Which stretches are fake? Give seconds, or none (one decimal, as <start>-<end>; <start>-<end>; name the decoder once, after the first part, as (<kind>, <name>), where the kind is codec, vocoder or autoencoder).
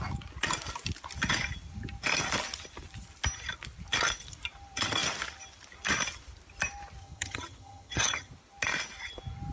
7.0-8.3 (vocoder, HiFi-GAN)